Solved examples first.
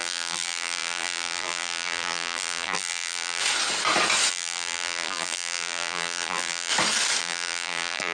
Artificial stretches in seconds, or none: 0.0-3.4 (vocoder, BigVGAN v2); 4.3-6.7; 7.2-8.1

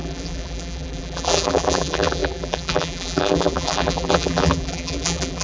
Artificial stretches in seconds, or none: 0.0-5.4 (vocoder, BigVGAN v2)

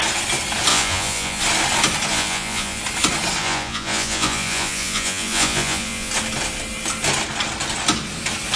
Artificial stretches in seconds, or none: 0.7-1.4 (vocoder, Vocos); 2.1-2.8; 3.4-6.1